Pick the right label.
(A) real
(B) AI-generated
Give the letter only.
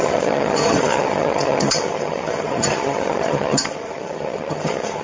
B